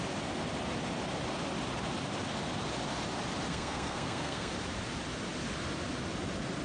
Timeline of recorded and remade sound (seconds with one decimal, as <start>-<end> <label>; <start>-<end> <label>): 0.0-3.5 recorded; 3.5-4.5 remade; 4.5-6.6 recorded